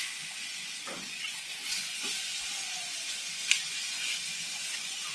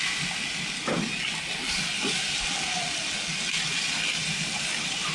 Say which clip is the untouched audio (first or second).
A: second